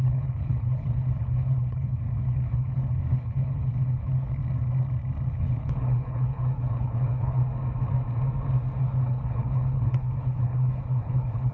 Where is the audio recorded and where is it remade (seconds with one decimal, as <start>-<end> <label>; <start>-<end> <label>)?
0.0-4.4 remade; 4.4-5.3 recorded; 5.3-7.4 remade; 7.4-8.8 recorded; 8.8-11.5 remade